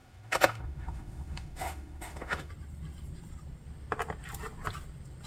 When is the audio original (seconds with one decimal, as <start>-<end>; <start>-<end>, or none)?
2.5-5.3

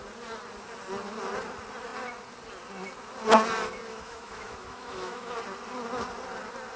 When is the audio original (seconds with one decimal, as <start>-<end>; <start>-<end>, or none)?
0.0-3.9; 5.3-6.8

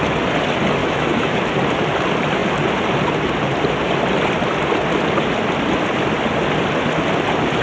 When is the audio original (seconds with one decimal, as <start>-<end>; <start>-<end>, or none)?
0.0-0.8; 1.4-7.6

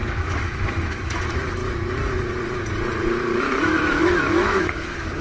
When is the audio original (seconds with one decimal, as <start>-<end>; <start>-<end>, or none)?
1.6-3.4

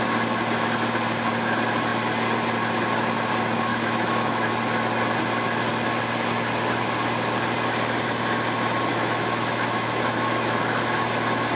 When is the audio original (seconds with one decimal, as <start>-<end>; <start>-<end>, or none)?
0.0-3.7; 4.5-8.9; 10.6-11.6

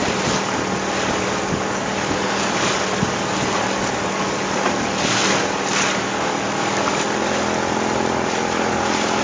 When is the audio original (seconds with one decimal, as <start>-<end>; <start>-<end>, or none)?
0.0-9.2

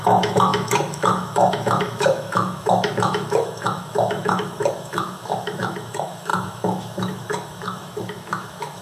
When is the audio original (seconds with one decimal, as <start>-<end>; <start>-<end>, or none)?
none

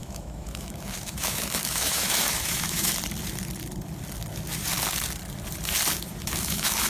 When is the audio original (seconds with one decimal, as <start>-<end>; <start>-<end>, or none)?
2.9-6.2